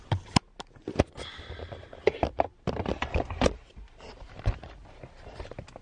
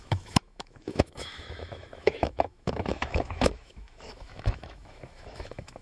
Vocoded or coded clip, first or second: second